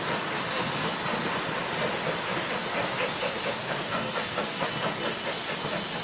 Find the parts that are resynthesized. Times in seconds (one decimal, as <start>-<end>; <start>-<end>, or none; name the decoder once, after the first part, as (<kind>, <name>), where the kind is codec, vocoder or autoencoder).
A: 3.6-4.7 (codec, SNAC)